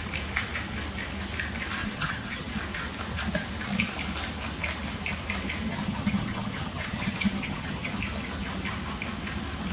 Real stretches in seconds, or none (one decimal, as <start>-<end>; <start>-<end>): 0.0-1.8; 2.5-5.7; 7.9-9.7